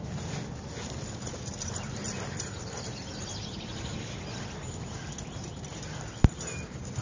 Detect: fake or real real